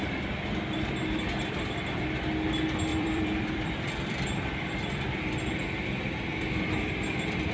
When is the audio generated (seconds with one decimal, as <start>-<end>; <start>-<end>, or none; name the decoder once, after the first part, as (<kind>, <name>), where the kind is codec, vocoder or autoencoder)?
2.9-5.2 (vocoder, BigVGAN v2)

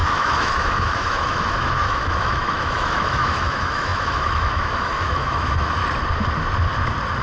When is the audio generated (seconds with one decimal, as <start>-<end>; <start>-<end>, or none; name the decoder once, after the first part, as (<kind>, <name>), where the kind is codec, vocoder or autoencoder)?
0.0-5.8 (autoencoder, DAC-VAE)

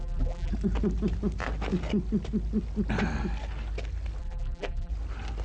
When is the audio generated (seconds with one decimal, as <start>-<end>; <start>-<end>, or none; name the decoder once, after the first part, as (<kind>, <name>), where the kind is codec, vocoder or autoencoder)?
0.0-0.5 (vocoder, BigVGAN v2); 4.2-4.9

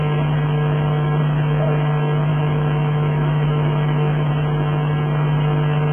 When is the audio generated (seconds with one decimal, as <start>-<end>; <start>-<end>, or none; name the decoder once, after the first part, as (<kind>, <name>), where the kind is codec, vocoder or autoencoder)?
2.3-4.3 (autoencoder, DAC-VAE)

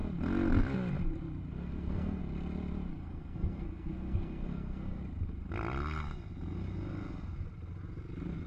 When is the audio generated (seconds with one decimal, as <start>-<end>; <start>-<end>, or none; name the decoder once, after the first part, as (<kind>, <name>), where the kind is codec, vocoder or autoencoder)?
1.5-2.2 (codec, SNAC); 2.9-5.0